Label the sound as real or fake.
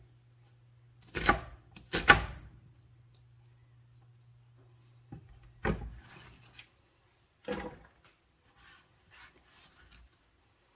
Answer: real